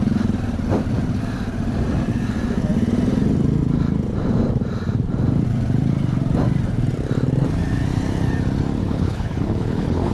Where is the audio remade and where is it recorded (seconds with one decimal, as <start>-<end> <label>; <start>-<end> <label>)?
0.0-8.8 recorded; 8.8-10.1 remade